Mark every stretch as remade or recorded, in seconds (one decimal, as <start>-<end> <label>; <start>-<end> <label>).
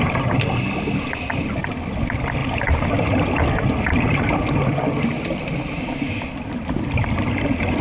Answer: 0.0-7.8 recorded